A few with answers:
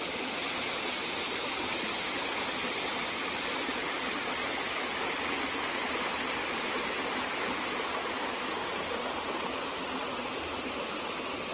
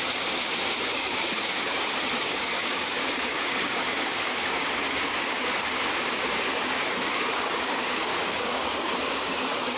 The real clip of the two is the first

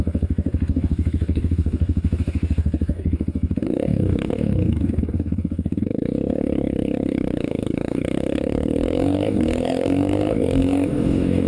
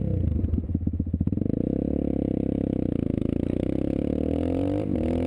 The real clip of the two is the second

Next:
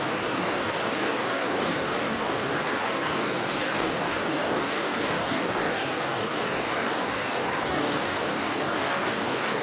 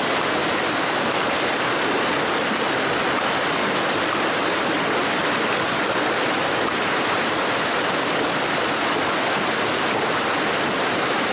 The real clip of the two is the second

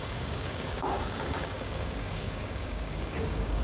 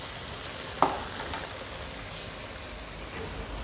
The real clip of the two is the second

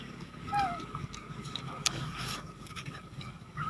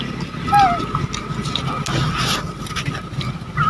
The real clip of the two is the second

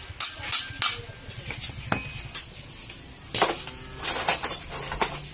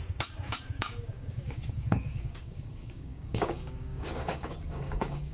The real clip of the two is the first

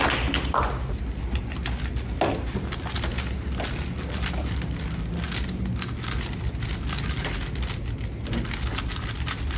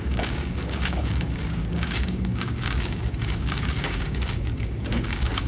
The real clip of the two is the first